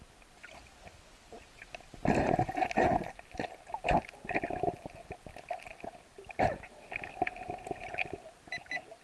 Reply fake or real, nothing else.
real